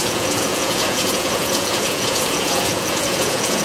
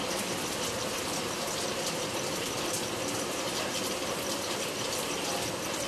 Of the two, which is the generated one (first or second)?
first